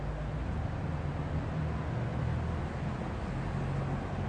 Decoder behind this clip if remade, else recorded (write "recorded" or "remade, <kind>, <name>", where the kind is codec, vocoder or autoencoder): recorded